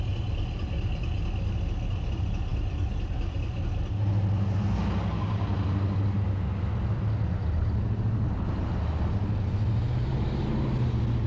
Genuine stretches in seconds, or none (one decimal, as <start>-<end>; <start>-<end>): 0.0-2.5; 3.6-11.3